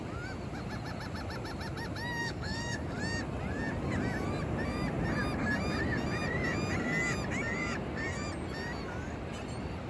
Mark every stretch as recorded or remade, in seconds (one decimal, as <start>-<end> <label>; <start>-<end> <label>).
0.0-2.2 recorded; 2.2-3.0 remade; 3.0-9.9 recorded